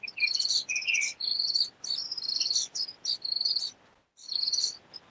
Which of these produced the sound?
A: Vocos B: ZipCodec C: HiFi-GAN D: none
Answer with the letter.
D